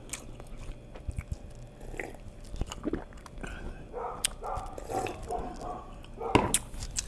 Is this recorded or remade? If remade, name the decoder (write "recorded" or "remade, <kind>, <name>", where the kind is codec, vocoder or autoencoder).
recorded